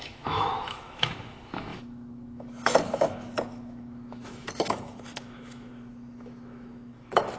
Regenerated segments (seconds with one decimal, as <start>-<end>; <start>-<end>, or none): 0.0-7.4